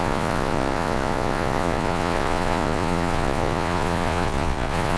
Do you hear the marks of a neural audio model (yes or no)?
yes